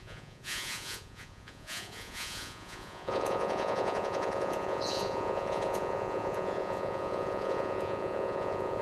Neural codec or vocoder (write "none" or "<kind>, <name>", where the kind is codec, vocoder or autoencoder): vocoder, Vocos